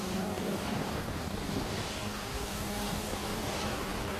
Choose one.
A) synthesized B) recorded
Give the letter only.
A